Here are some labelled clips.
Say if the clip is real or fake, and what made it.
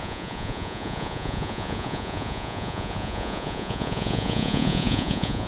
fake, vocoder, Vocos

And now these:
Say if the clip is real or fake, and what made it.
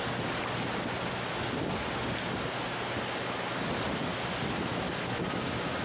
real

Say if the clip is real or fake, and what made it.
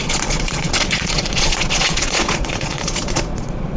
fake, vocoder, Vocos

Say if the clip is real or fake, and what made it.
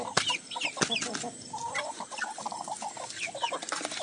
real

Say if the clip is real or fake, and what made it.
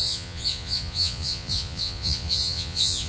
fake, vocoder, Vocos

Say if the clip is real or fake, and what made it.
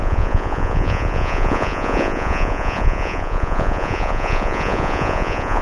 fake, vocoder, Vocos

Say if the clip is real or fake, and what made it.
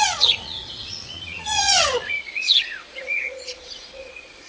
fake, vocoder, Vocos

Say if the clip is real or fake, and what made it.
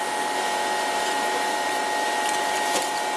real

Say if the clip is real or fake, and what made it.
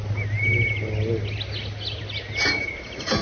real